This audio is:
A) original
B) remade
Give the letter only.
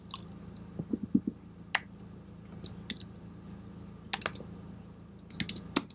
A